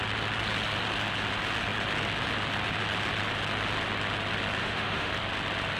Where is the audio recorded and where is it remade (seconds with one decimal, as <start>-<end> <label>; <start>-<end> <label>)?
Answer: 0.0-4.6 recorded; 4.6-5.1 remade; 5.1-5.8 recorded

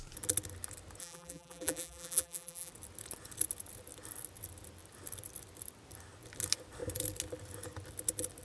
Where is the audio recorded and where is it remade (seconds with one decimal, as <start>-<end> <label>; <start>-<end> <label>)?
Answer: 0.0-1.0 recorded; 1.0-2.7 remade; 2.7-8.4 recorded

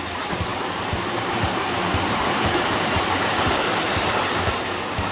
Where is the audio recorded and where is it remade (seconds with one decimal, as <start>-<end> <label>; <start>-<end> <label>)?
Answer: 0.0-0.5 recorded; 0.5-3.6 remade; 3.6-5.1 recorded